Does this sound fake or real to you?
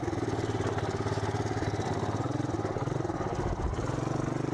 real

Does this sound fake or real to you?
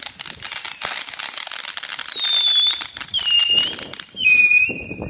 real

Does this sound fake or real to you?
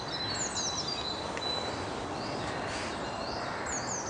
real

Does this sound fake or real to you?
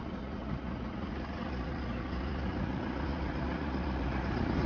fake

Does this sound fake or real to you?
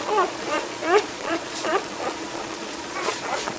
fake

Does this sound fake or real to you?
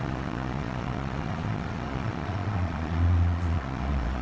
fake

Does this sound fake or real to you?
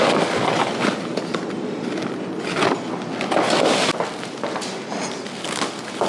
real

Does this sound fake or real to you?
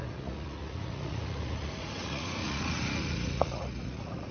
fake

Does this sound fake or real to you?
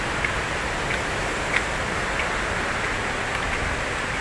real